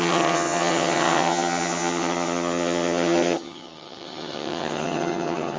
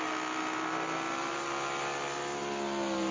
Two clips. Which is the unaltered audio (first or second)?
second